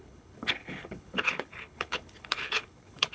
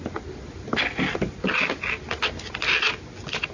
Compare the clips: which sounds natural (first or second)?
second